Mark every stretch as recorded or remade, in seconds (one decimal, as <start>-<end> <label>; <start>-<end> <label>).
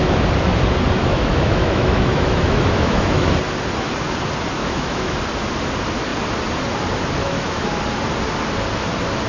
0.0-1.0 recorded; 1.0-3.3 remade; 3.3-4.6 recorded; 4.6-5.2 remade; 5.2-7.2 recorded; 7.2-7.8 remade; 7.8-9.3 recorded